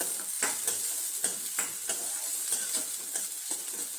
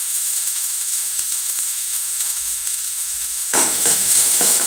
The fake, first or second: second